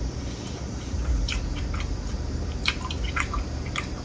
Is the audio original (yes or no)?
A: no